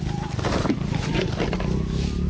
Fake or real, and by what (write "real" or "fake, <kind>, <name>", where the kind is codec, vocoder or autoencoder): real